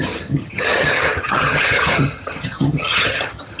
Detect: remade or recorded remade